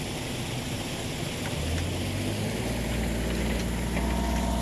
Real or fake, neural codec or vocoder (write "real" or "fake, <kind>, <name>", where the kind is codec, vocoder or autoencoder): real